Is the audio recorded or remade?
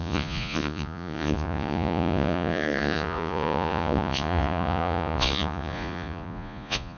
remade